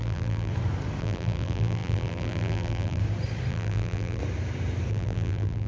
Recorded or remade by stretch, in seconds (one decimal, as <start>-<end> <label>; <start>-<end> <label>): 0.0-0.5 remade; 0.5-1.0 recorded; 1.0-3.0 remade; 3.0-3.5 recorded; 3.5-4.2 remade; 4.2-4.9 recorded; 4.9-5.7 remade

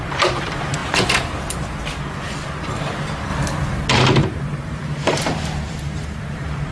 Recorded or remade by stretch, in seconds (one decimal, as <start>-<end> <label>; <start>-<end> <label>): 0.0-0.8 remade; 0.8-2.0 recorded; 2.0-3.3 remade; 3.3-3.9 recorded; 3.9-6.7 remade

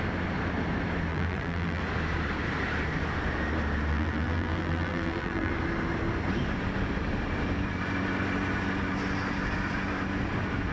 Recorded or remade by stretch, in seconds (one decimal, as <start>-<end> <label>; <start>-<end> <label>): 0.0-1.1 recorded; 1.1-1.8 remade; 1.8-3.9 recorded; 3.9-5.5 remade; 5.5-10.7 recorded

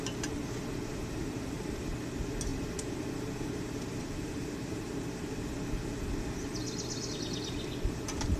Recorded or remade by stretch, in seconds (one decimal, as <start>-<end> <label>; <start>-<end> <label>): 0.0-0.9 recorded; 0.9-1.8 remade; 1.8-2.5 recorded; 2.5-5.4 remade; 5.4-8.4 recorded

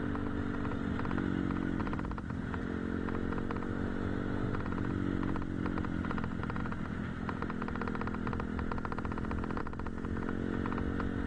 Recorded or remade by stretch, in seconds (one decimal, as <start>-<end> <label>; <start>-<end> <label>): 0.0-1.8 recorded; 1.8-2.6 remade; 2.6-11.3 recorded

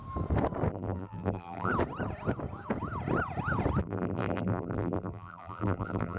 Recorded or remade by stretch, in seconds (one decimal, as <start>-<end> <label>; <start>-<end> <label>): 0.0-0.7 recorded; 0.7-1.7 remade; 1.7-3.8 recorded; 3.8-6.2 remade